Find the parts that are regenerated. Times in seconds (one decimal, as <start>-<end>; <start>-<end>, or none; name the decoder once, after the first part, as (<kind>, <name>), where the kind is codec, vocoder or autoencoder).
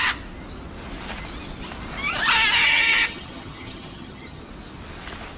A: 2.6-4.4 (vocoder, HiFi-GAN)